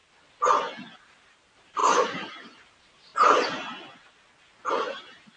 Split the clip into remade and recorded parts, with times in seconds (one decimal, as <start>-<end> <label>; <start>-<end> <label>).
0.0-1.0 recorded; 1.0-3.1 remade; 3.1-4.7 recorded; 4.7-5.4 remade